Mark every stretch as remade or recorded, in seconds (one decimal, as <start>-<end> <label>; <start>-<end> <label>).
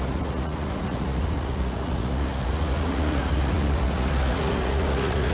0.0-5.3 remade